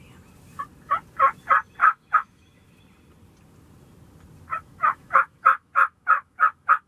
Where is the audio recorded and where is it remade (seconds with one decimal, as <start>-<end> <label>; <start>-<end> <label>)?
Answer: 0.0-1.8 recorded; 1.8-2.8 remade; 2.8-4.5 recorded; 4.5-6.9 remade